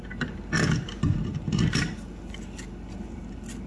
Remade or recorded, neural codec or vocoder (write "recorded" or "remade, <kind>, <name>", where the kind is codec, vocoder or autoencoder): recorded